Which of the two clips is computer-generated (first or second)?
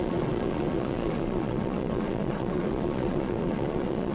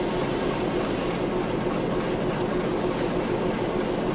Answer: first